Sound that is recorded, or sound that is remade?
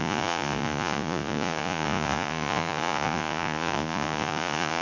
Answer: remade